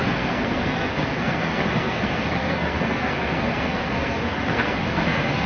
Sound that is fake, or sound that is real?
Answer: fake